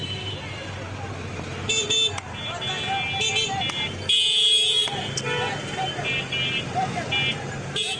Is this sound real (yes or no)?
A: yes